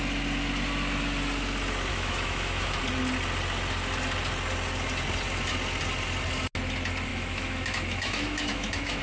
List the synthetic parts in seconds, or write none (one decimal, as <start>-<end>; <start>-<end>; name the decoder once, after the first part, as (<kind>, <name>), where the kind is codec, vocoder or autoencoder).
1.9-2.8 (autoencoder, DAC-VAE); 7.1-9.0